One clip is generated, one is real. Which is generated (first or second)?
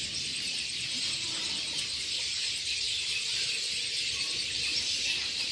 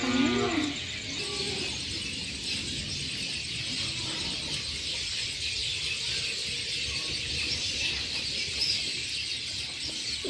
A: first